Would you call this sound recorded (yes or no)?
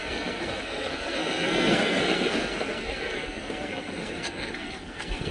no